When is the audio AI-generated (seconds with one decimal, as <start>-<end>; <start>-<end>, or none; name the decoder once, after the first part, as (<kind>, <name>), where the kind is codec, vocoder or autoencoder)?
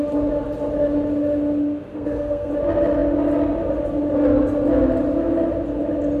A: 1.9-2.5 (codec, SNAC)